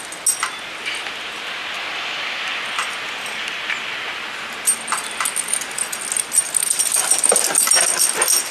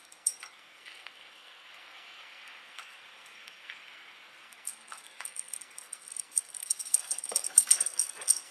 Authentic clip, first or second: first